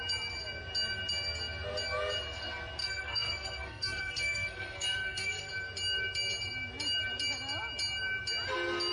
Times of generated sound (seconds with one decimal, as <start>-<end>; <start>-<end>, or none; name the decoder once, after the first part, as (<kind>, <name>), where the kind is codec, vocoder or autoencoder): 2.8-5.5 (codec, SNAC)